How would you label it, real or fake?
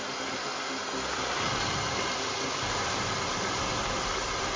real